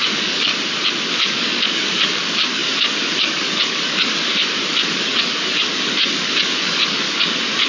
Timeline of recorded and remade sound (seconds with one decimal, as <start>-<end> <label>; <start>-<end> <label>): 0.0-0.5 remade; 0.5-1.1 recorded; 1.1-7.7 remade

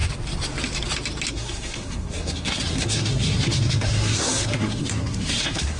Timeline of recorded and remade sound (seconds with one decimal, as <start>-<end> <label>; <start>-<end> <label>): 0.0-1.3 recorded; 1.3-5.8 remade

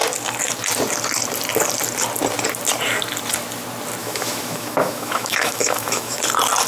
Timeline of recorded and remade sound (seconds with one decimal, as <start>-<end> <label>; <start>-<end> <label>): 0.0-4.0 recorded; 4.0-6.2 remade; 6.2-6.7 recorded

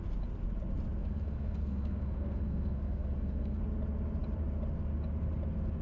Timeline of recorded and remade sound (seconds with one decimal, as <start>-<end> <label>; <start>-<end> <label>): 0.0-1.0 recorded; 1.0-3.6 remade; 3.6-5.8 recorded

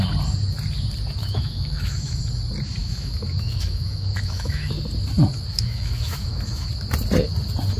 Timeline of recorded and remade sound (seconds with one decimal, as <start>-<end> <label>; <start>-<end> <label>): 0.0-1.2 recorded; 1.2-2.2 remade; 2.2-2.8 recorded; 2.8-4.7 remade; 4.7-5.5 recorded; 5.5-6.7 remade; 6.7-7.8 recorded

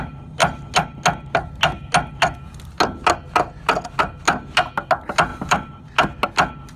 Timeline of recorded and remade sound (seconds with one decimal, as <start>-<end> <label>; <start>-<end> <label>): 0.0-5.3 recorded; 5.3-5.8 remade; 5.8-6.8 recorded

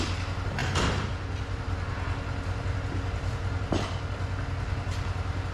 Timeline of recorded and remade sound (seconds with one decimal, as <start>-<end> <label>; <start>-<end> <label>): 0.0-5.5 recorded